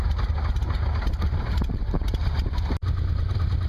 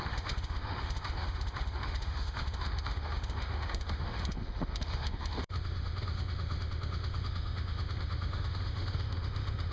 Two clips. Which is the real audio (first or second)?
first